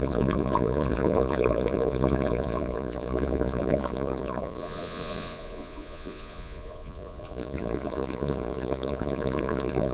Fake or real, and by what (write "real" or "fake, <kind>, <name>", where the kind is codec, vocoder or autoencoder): fake, vocoder, Vocos